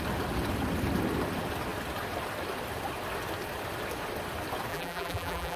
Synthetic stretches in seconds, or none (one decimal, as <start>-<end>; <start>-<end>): 4.7-5.6